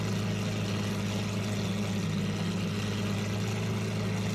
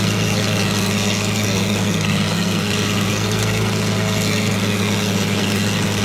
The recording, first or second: first